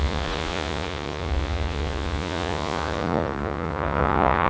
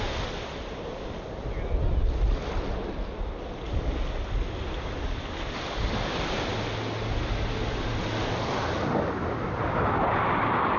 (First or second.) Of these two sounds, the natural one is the second